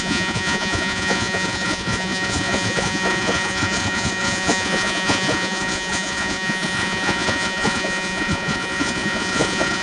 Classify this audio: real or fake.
fake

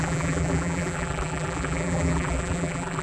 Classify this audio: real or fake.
fake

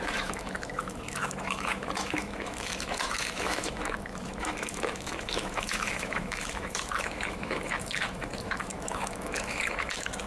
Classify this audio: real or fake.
fake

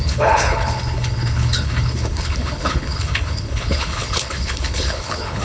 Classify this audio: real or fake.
fake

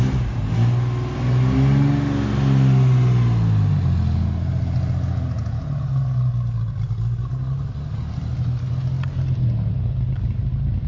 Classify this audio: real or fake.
real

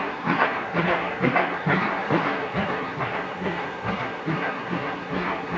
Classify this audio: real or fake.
fake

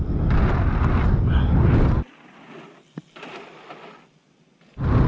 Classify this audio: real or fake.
real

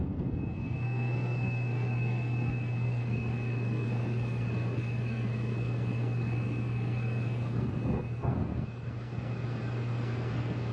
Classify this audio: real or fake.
fake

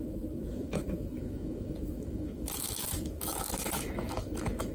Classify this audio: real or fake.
fake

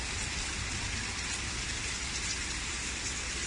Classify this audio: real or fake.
fake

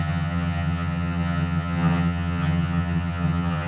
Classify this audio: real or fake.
fake